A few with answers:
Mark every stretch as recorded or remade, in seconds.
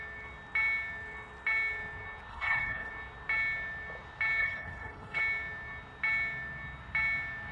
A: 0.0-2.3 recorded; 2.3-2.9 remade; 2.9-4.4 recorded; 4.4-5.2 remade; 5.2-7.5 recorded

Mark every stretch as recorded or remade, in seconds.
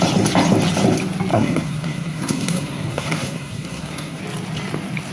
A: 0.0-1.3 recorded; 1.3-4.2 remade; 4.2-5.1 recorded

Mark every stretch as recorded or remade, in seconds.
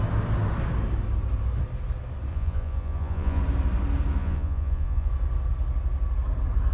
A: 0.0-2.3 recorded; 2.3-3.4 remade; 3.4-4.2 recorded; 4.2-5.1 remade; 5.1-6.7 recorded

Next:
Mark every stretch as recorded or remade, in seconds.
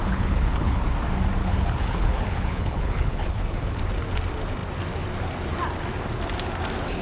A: 0.0-0.8 remade; 0.8-1.4 recorded; 1.4-3.8 remade; 3.8-7.0 recorded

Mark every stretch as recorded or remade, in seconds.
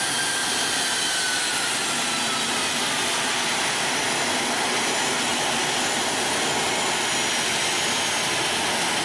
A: 0.0-9.0 recorded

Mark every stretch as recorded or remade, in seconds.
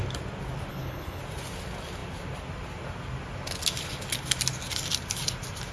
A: 0.0-0.7 recorded; 0.7-1.2 remade; 1.2-5.7 recorded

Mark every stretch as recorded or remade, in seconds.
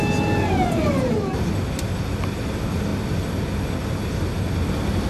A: 0.0-5.1 recorded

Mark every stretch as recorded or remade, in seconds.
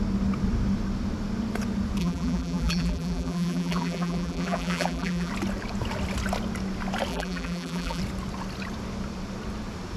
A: 0.0-2.0 recorded; 2.0-5.3 remade; 5.3-7.1 recorded; 7.1-8.0 remade; 8.0-10.0 recorded